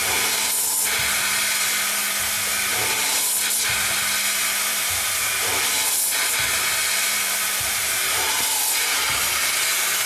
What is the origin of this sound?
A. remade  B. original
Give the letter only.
B